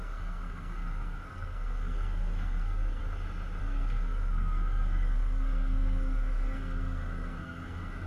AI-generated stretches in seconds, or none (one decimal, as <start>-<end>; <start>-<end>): 0.0-3.0; 3.6-8.1